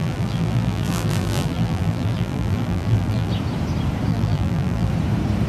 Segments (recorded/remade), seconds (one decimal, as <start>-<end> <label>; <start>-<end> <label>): 0.0-3.3 remade; 3.3-4.1 recorded; 4.1-4.9 remade; 4.9-5.5 recorded